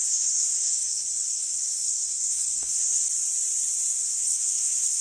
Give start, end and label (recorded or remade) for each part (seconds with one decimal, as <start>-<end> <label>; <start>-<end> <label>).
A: 0.0-3.0 remade; 3.0-3.9 recorded; 3.9-5.0 remade